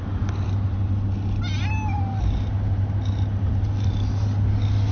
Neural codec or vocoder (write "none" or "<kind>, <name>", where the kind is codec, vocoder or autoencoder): none